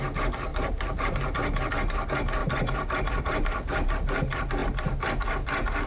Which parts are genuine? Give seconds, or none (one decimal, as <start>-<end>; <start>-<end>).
0.0-0.5; 1.7-2.4; 3.9-5.9